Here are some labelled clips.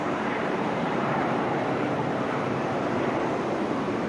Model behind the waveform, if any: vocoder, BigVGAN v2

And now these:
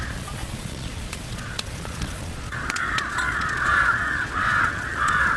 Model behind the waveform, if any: vocoder, Vocos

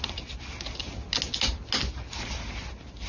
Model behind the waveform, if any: none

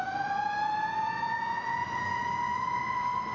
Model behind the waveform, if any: none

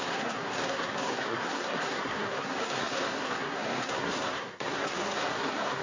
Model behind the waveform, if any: codec, SNAC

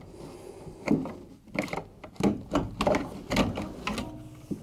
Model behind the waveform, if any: none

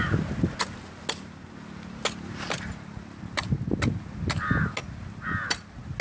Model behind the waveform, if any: none